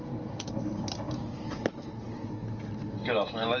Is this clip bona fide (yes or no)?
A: yes